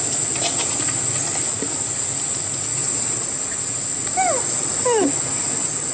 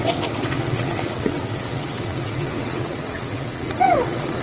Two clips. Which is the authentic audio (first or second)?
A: first